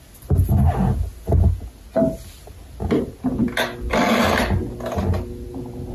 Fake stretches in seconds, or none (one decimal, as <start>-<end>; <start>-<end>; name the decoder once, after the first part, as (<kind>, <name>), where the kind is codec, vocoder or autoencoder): none

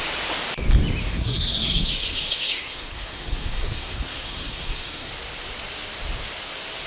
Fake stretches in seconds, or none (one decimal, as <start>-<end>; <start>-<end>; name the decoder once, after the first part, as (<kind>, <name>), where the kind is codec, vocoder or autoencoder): 1.0-5.1 (codec, SNAC)

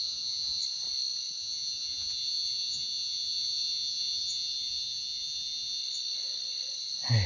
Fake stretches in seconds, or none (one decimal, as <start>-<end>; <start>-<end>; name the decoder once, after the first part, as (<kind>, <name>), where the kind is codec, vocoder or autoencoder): 0.0-0.6 (vocoder, Vocos); 1.4-5.8

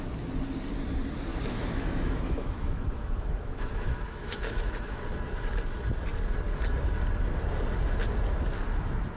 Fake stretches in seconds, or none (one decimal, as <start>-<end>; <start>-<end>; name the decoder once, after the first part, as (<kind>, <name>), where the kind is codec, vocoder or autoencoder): 1.3-5.0 (autoencoder, DAC-VAE)